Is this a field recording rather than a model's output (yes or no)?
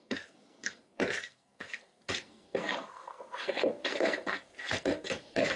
no